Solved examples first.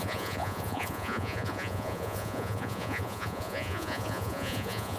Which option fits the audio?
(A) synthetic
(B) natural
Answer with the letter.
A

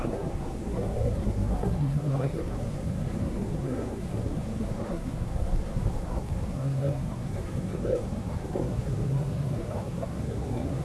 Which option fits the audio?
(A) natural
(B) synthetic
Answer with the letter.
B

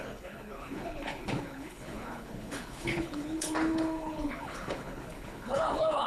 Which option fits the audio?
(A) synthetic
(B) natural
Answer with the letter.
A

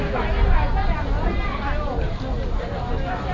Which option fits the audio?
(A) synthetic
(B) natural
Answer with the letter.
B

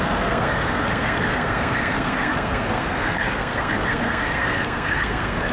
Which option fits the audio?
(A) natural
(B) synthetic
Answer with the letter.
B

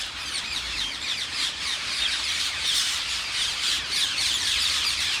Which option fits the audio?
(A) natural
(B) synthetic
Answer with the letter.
B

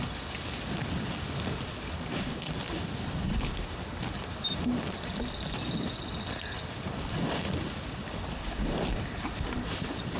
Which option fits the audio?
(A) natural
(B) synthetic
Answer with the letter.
A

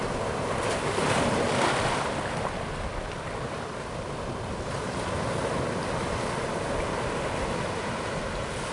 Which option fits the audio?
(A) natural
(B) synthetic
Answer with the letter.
A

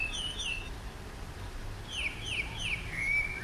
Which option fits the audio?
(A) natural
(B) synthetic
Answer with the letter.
A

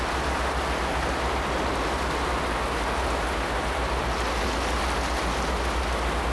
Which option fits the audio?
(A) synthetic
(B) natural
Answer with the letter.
B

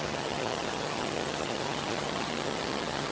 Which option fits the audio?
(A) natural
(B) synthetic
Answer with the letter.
B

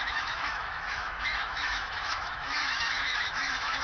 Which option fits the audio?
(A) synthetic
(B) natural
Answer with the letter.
A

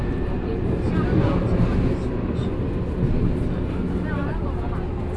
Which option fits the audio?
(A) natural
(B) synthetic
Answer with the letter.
A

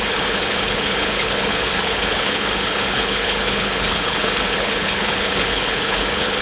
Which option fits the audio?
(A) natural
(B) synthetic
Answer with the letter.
B